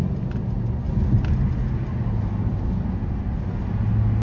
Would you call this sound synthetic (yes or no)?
no